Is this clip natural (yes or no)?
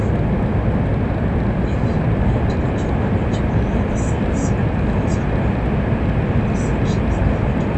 yes